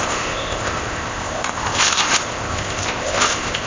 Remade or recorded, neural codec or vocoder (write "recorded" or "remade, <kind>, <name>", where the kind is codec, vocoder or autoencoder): remade, codec, ZipCodec